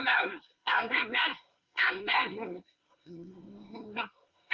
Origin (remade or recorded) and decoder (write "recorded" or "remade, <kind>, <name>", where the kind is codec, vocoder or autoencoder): remade, codec, SNAC